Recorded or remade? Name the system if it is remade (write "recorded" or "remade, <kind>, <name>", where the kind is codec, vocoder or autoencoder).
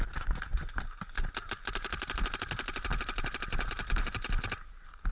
recorded